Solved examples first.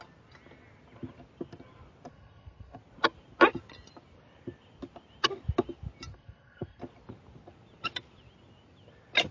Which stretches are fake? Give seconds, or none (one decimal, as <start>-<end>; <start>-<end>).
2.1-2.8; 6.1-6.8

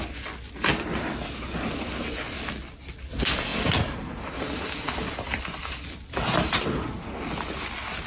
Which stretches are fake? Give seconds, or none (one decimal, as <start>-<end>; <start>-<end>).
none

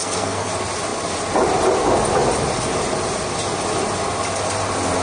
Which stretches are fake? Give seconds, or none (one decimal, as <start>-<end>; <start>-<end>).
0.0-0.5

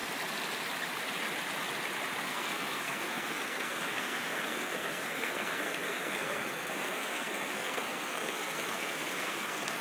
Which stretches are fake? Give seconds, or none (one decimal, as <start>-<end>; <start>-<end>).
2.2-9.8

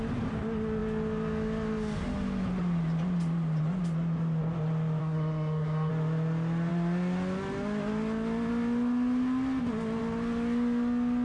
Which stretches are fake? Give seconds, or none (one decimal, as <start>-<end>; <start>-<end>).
5.0-5.9

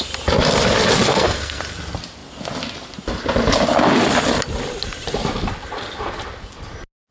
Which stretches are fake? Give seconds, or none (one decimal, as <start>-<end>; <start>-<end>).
1.1-1.6